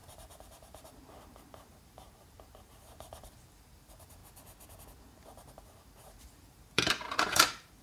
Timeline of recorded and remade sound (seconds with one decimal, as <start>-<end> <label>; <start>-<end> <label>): 0.0-4.2 remade; 4.2-5.0 recorded; 5.0-7.8 remade